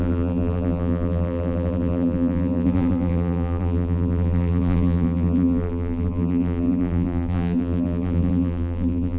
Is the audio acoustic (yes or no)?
no